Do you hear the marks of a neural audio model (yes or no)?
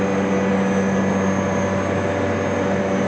no